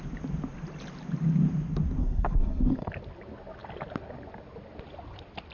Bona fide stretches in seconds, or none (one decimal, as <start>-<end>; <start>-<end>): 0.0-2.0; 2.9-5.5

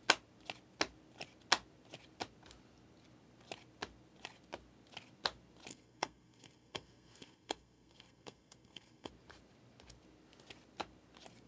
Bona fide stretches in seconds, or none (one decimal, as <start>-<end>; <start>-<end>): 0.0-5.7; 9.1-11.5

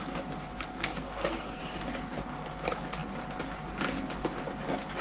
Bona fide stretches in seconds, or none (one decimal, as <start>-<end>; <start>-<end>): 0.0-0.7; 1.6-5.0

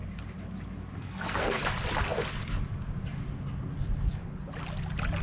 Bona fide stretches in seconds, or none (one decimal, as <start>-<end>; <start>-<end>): 0.0-1.0; 1.6-5.2

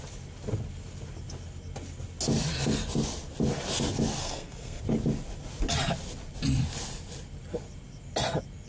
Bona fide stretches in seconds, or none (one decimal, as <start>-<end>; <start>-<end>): 0.0-4.2; 4.8-8.7

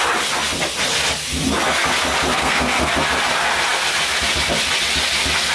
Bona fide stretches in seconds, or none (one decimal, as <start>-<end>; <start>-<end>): 0.0-2.3; 2.9-5.5

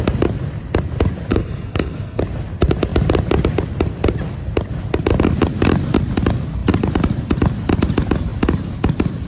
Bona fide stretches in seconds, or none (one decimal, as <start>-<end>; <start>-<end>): 0.0-1.3; 2.2-9.3

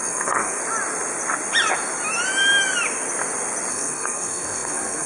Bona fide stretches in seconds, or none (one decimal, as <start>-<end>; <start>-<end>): 0.6-3.7